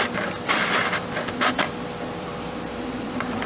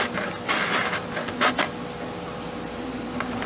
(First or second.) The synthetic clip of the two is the first